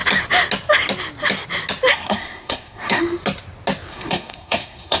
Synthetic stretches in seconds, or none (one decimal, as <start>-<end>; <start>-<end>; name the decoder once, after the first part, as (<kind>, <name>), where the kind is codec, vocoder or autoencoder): 1.9-3.0 (codec, SNAC); 3.9-5.0